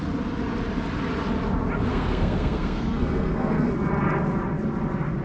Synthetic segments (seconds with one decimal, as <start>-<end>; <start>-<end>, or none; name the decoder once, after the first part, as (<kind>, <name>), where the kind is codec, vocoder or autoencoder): 1.9-3.7 (codec, SNAC)